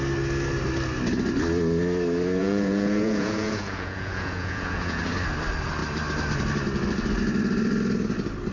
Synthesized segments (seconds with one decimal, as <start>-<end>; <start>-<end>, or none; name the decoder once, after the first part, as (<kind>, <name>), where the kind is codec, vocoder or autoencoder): 2.4-5.0 (vocoder, Vocos)